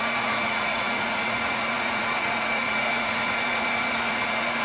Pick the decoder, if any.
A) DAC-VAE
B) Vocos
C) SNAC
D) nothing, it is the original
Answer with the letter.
B